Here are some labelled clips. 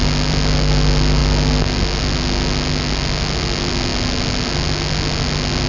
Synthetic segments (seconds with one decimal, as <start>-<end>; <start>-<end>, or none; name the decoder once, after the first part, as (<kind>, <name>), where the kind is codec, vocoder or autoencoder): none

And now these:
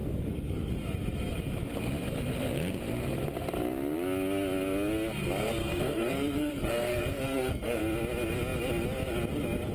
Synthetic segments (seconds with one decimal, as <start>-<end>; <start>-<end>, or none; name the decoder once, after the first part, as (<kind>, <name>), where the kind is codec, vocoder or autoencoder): 0.0-0.7 (codec, SNAC); 5.6-7.8

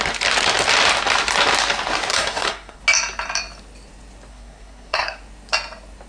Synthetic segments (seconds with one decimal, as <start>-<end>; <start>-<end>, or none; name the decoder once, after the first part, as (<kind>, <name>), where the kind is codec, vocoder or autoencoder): 2.1-2.8 (codec, SNAC); 4.3-5.2

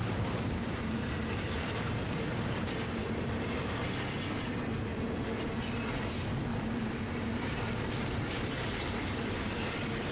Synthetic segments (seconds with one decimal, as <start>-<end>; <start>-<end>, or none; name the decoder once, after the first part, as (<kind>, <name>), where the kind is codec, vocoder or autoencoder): 0.0-3.8 (vocoder, BigVGAN v2); 6.5-9.5

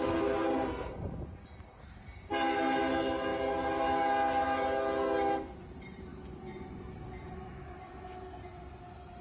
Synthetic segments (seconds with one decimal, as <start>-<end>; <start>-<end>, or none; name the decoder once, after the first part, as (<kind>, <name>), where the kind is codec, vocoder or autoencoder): none